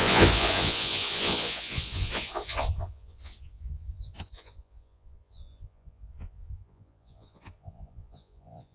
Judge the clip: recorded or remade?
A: remade